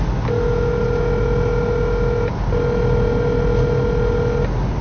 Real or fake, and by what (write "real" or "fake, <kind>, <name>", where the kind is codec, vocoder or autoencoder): real